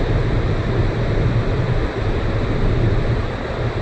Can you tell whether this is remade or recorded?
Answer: recorded